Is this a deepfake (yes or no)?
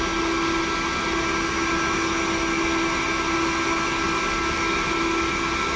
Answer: no